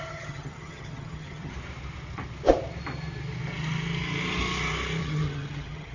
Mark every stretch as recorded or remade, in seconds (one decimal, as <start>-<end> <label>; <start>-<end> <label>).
0.0-1.5 remade; 1.5-5.0 recorded; 5.0-5.9 remade